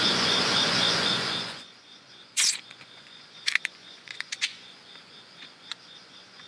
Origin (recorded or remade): remade